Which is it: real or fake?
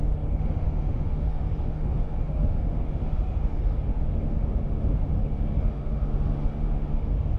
fake